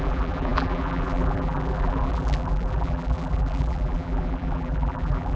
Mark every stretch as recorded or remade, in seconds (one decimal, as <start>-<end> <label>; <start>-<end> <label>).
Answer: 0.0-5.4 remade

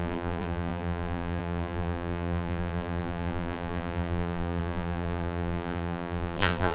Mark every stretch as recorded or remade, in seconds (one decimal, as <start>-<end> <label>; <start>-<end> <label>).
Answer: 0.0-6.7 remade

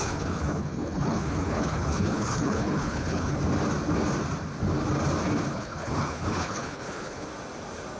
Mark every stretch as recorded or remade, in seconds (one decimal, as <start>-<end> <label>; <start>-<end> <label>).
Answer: 0.0-3.4 remade; 3.4-5.5 recorded; 5.5-7.3 remade; 7.3-8.0 recorded

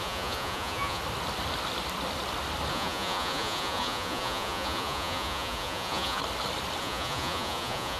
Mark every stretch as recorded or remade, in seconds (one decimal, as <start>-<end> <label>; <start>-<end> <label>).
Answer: 0.0-1.0 remade; 1.0-2.7 recorded; 2.7-6.2 remade; 6.2-6.8 recorded; 6.8-8.0 remade

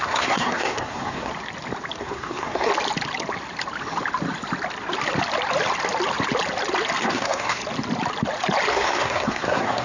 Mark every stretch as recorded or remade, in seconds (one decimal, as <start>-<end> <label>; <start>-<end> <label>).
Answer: 0.0-1.3 remade; 1.3-2.0 recorded; 2.0-2.7 remade; 2.7-7.0 recorded; 7.0-7.6 remade; 7.6-8.7 recorded; 8.7-9.8 remade

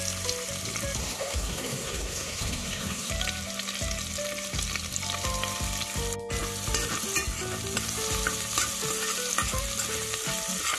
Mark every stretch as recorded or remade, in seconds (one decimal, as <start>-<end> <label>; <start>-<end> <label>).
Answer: 0.0-1.0 recorded; 1.0-3.1 remade; 3.1-10.8 recorded

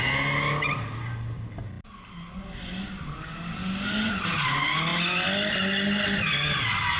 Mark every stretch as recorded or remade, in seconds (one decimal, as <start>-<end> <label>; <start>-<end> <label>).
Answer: 0.0-7.0 recorded

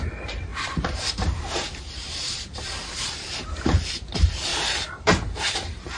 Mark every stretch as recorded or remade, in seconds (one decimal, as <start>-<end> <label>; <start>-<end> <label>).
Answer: 0.0-4.5 remade; 4.5-5.4 recorded; 5.4-6.0 remade